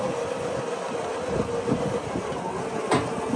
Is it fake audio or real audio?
real